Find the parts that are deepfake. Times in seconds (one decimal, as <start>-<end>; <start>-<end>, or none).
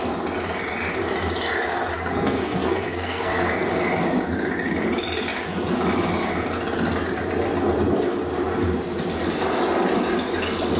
1.9-3.7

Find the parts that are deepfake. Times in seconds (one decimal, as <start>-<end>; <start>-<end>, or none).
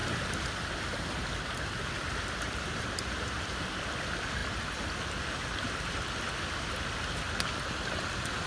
none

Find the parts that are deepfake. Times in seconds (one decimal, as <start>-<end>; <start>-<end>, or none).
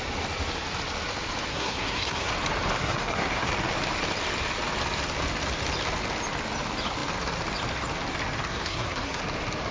1.5-2.3; 2.8-3.5; 8.5-9.2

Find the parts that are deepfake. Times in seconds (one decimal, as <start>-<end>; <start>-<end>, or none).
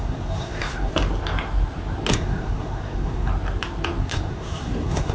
0.0-0.9; 2.1-3.3; 4.0-5.1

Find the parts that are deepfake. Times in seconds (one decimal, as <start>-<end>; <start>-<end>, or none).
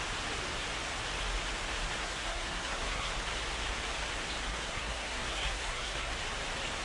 2.0-3.1; 4.5-6.1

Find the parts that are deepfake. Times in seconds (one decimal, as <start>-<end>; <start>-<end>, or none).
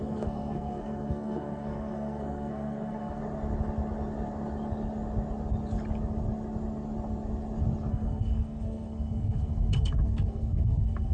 0.0-3.2; 7.9-11.1